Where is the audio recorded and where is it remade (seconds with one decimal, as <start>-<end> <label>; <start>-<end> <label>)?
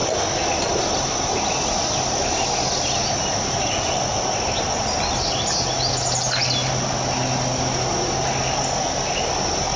0.0-9.8 recorded